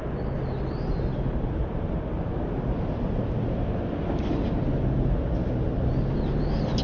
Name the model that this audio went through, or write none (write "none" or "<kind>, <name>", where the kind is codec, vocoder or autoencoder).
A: none